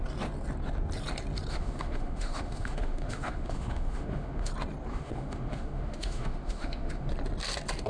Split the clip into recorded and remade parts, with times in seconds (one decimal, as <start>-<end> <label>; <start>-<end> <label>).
0.0-1.5 recorded; 1.5-4.5 remade; 4.5-4.9 recorded; 4.9-7.1 remade; 7.1-7.9 recorded